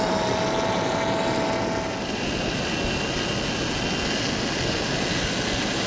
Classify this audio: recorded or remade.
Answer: recorded